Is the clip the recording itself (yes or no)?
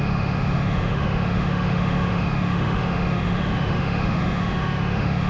no